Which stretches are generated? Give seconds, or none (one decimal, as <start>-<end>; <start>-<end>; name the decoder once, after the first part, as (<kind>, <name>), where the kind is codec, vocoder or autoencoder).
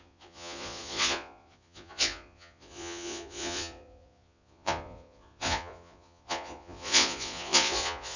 0.0-8.2 (vocoder, Vocos)